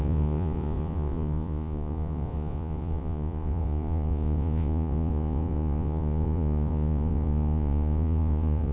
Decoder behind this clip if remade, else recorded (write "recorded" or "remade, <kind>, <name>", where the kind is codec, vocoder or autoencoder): remade, vocoder, Vocos